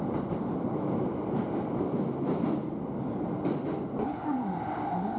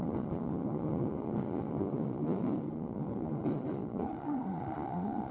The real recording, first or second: first